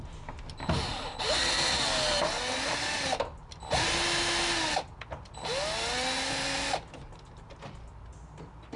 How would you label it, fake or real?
real